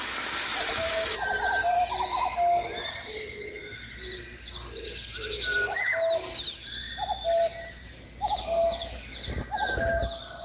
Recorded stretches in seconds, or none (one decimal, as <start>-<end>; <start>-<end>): 0.0-10.4